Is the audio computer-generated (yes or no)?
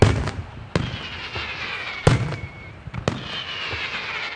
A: no